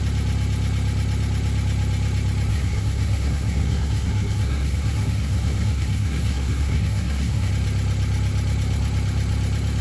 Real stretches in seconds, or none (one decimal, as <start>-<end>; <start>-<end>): 0.0-2.5; 7.5-9.8